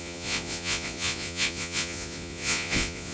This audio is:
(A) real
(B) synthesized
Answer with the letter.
B